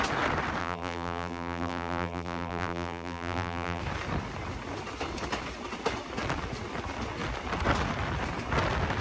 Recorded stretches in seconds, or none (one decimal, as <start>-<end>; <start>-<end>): 0.0-0.6; 3.8-9.0